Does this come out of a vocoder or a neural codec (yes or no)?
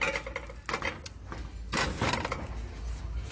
no